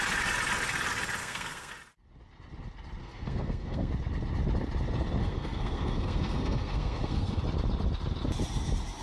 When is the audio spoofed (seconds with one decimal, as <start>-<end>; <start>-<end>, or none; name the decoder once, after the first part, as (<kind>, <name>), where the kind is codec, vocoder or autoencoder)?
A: 1.2-1.7 (codec, SNAC); 3.0-3.9; 5.2-7.4